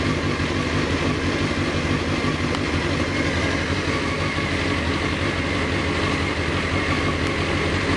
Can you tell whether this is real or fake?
real